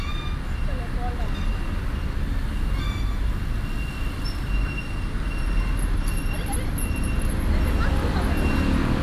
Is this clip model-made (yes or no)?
no